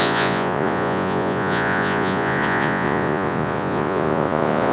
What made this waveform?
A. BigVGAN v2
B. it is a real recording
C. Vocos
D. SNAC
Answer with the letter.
C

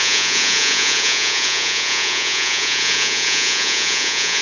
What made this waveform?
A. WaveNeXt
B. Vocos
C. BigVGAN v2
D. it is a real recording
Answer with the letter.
B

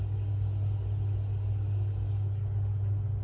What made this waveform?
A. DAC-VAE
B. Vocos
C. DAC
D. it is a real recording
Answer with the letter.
D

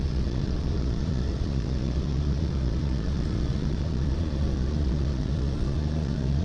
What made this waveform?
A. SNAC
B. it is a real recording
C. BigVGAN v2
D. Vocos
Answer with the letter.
D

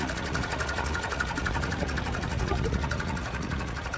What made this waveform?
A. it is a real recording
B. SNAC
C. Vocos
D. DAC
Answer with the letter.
C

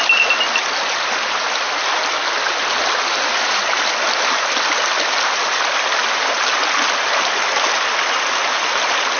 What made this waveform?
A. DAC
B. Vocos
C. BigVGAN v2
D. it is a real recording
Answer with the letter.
D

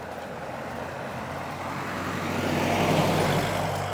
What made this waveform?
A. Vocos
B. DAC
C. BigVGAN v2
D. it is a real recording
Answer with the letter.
D